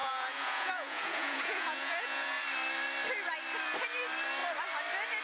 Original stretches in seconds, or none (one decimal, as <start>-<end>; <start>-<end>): 2.4-5.2